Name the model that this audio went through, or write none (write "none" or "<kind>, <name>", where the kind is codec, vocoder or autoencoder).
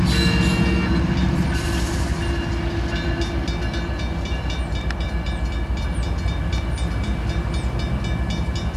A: none